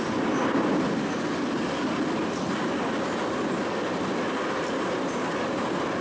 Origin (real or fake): fake